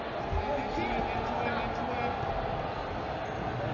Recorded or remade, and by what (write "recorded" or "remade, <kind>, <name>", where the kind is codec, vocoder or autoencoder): recorded